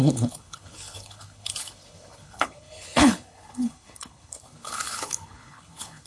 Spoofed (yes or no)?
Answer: yes